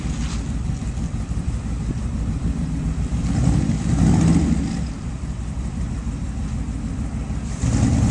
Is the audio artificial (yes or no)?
no